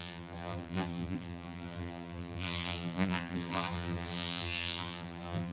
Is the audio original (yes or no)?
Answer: no